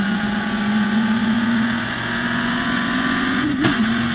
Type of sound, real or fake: fake